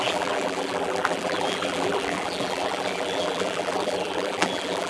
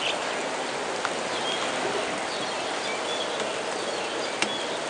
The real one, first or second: second